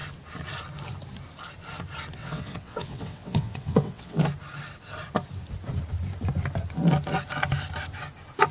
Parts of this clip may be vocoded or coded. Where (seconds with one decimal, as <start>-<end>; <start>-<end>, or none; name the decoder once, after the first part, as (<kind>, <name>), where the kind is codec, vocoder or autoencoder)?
2.2-4.2 (vocoder, WaveNeXt)